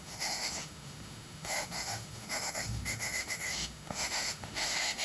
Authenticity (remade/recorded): remade